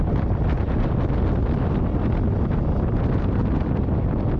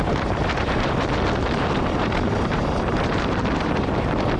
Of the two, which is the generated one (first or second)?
second